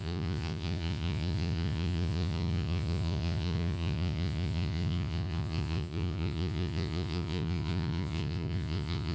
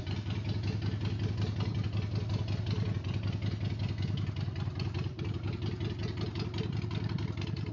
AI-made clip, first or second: first